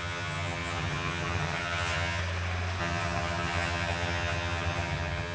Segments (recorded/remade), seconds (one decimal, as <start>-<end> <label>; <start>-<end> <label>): 0.0-2.2 remade; 2.2-2.8 recorded; 2.8-5.3 remade